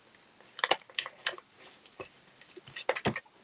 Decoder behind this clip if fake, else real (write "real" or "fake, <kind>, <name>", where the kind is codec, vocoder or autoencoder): real